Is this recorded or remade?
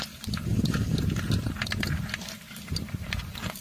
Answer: remade